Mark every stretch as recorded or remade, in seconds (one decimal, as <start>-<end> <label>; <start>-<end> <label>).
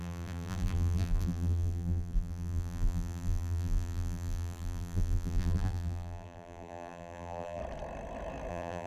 0.0-7.6 remade; 7.6-8.5 recorded; 8.5-8.9 remade